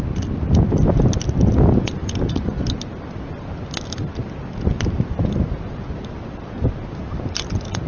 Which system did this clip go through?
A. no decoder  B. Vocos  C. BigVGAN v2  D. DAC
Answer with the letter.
A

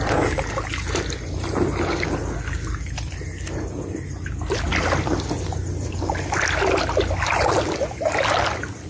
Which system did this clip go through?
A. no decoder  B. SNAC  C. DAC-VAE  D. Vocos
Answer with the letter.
A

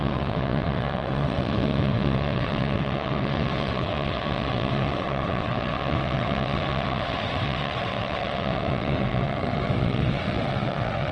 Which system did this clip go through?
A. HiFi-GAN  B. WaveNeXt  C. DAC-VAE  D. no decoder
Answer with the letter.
B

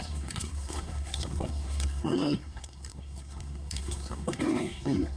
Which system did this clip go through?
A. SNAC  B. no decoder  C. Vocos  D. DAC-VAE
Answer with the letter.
A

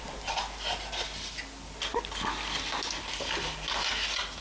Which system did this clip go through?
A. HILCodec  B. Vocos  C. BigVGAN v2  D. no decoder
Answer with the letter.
D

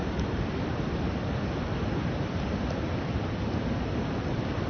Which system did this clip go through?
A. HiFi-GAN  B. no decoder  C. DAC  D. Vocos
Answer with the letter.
B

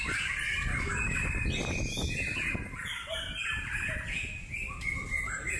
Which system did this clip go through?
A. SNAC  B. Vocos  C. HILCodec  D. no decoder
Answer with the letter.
D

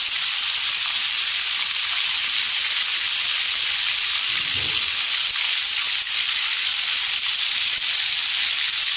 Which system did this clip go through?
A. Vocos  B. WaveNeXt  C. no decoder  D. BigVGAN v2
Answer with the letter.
C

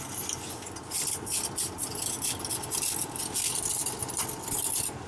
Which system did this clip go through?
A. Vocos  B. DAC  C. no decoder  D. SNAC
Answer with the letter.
C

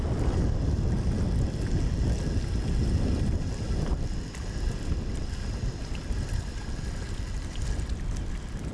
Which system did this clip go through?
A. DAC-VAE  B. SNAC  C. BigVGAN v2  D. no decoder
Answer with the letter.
D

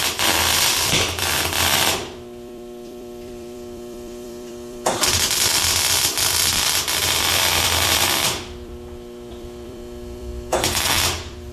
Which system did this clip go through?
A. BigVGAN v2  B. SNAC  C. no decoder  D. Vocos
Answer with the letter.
A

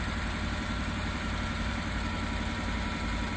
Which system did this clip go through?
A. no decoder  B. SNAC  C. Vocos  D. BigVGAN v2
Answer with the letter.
D